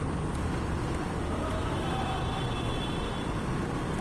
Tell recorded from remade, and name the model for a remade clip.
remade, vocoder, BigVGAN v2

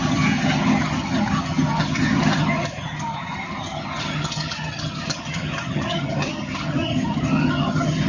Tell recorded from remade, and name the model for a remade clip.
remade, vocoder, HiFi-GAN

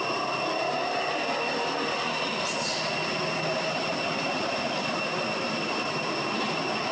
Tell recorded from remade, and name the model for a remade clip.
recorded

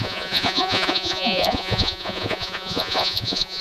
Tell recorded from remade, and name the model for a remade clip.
remade, vocoder, Vocos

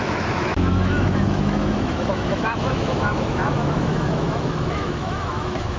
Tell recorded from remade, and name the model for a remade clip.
remade, autoencoder, DAC-VAE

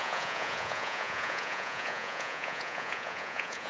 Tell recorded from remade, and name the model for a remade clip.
remade, vocoder, Vocos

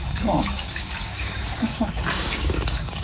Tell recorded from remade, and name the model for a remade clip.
remade, codec, DAC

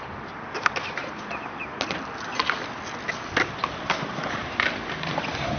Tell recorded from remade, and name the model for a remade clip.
recorded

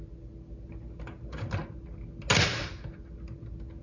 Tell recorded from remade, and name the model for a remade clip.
recorded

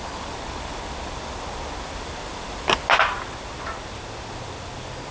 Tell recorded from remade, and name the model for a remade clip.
recorded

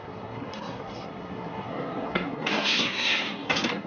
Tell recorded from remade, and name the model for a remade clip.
remade, codec, SNAC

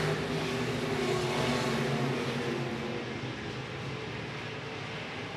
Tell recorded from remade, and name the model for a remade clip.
recorded